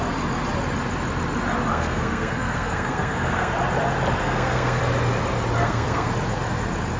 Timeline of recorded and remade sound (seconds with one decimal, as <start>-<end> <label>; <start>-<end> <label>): 0.0-1.7 recorded; 1.7-3.5 remade; 3.5-4.2 recorded; 4.2-4.8 remade; 4.8-5.6 recorded; 5.6-6.1 remade; 6.1-7.0 recorded